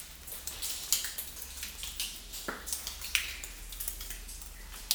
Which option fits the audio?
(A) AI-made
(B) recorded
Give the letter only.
B